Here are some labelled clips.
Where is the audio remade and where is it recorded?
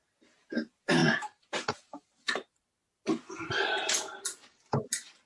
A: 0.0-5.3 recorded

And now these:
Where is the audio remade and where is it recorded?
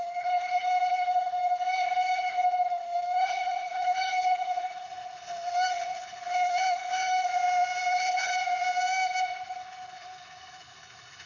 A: 0.0-7.3 remade; 7.3-7.9 recorded; 7.9-8.3 remade; 8.3-9.4 recorded; 9.4-11.3 remade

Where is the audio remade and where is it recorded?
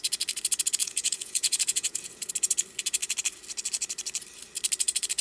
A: 0.0-0.8 recorded; 0.8-2.3 remade; 2.3-5.2 recorded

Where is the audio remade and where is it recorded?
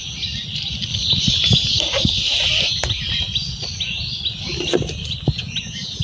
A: 0.0-6.0 recorded